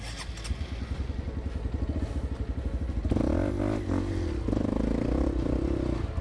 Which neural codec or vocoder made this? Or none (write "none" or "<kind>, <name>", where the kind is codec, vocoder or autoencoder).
none